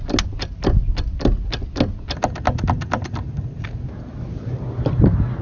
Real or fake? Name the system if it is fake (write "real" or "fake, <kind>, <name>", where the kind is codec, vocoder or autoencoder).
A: real